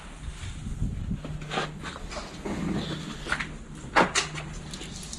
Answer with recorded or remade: recorded